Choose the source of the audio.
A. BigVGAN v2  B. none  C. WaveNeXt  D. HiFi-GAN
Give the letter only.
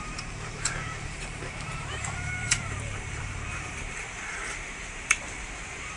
A